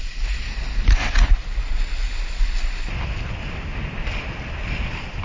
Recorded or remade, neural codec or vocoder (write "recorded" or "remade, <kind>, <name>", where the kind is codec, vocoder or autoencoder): recorded